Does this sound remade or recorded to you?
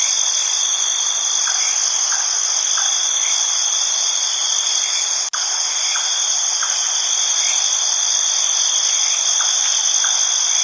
recorded